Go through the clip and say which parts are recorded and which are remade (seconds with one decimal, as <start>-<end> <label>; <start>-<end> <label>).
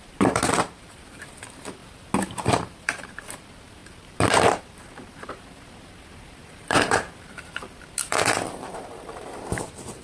0.0-1.8 remade; 1.8-2.5 recorded; 2.5-10.0 remade